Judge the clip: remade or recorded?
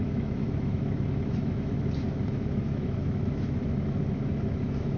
remade